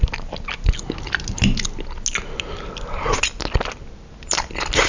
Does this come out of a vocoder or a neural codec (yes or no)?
no